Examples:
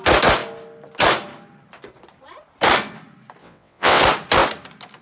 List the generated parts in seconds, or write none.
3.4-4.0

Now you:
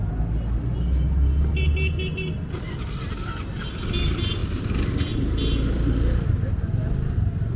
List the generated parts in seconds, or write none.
none

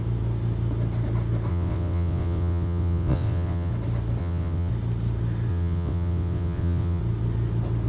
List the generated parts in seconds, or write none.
1.5-3.7; 4.2-4.7; 5.5-7.0